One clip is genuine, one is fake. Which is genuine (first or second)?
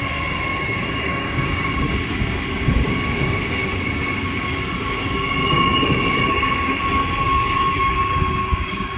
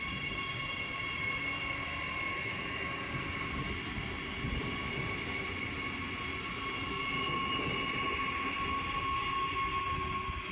second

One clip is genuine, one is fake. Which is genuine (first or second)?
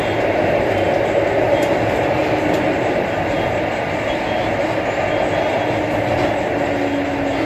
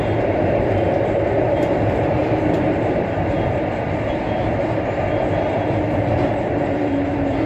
first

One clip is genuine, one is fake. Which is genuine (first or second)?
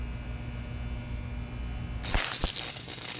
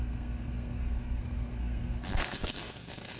first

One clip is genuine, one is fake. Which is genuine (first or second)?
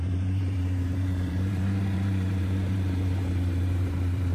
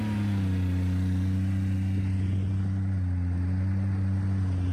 second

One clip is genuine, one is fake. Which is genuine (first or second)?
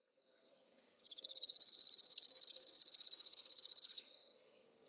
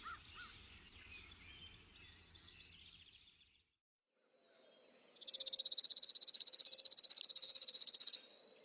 second